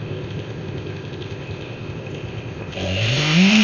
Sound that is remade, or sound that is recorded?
remade